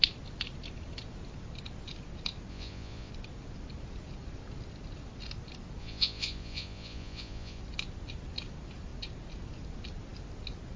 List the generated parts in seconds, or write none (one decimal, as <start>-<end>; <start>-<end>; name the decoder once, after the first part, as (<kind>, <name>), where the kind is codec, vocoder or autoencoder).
2.5-3.1 (vocoder, Vocos); 5.8-7.6